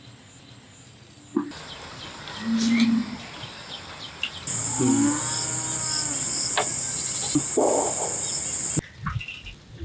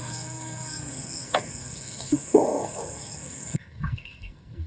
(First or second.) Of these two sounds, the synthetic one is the second